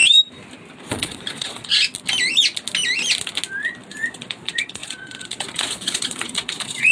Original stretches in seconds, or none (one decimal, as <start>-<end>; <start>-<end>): 0.0-0.9; 1.7-4.1